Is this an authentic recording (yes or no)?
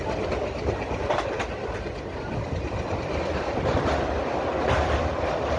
yes